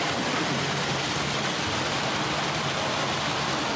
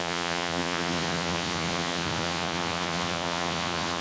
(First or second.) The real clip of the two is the first